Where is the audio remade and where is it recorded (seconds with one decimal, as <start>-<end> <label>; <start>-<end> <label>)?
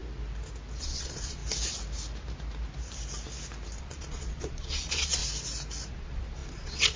0.0-0.8 recorded; 0.8-1.4 remade; 1.4-3.8 recorded; 3.8-5.2 remade; 5.2-5.9 recorded; 5.9-7.0 remade